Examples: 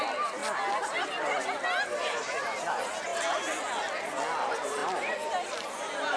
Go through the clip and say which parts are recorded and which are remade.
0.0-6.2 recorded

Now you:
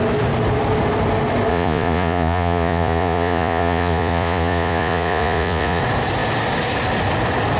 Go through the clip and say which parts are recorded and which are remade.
0.0-1.5 recorded; 1.5-5.8 remade; 5.8-7.6 recorded

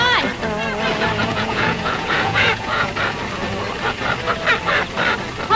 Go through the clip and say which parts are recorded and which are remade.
0.0-1.2 recorded; 1.2-2.9 remade; 2.9-5.6 recorded

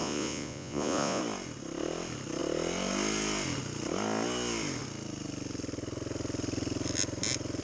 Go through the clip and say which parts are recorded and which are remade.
0.0-1.2 remade; 1.2-7.6 recorded

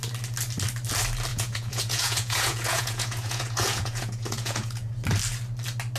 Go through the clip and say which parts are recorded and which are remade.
0.0-1.3 recorded; 1.3-4.9 remade; 4.9-6.0 recorded

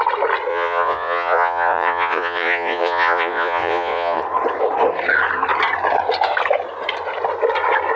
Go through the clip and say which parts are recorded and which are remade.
0.0-0.5 recorded; 0.5-4.2 remade; 4.2-8.0 recorded

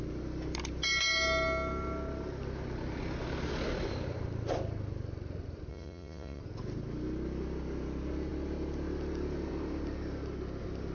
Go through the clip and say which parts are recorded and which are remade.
0.0-5.7 recorded; 5.7-6.4 remade; 6.4-10.9 recorded

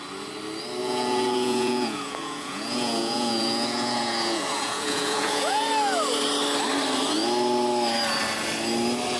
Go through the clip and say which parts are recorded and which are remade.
0.0-0.8 recorded; 0.8-5.7 remade; 5.7-9.2 recorded